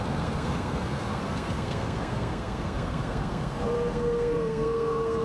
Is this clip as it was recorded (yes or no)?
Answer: no